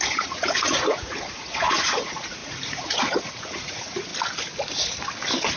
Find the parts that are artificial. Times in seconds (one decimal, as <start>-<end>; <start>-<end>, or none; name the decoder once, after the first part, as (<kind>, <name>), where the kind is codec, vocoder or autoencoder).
0.0-4.1 (vocoder, Vocos)